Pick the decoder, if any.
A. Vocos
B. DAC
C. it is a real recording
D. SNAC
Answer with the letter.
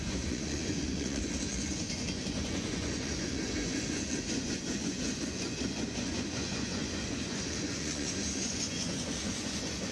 A